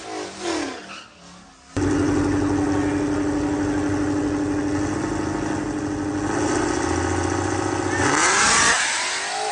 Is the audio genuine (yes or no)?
yes